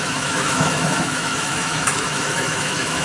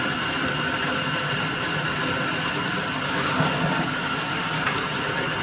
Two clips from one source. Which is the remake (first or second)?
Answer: first